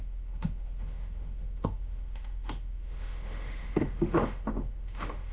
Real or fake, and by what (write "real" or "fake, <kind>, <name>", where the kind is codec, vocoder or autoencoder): fake, autoencoder, DAC-VAE